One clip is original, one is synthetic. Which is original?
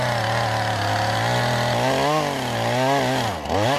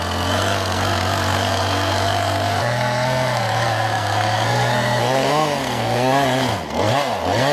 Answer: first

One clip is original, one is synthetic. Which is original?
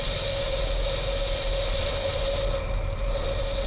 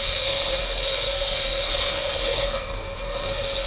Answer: first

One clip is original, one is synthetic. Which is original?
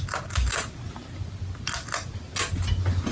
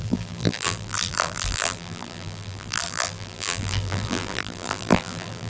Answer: first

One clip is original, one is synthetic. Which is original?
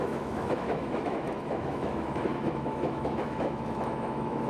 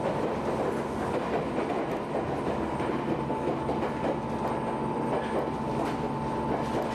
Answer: second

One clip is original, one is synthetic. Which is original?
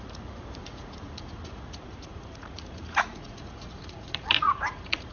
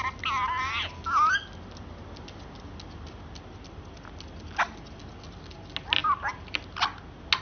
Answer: second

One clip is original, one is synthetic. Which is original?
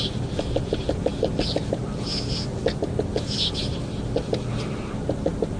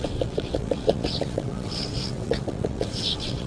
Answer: first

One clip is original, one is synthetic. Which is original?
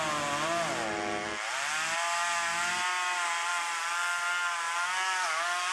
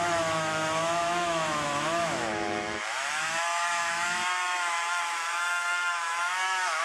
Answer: first